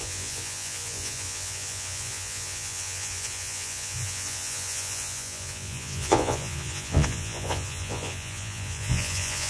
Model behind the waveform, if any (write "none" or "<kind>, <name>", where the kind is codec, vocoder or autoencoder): vocoder, Vocos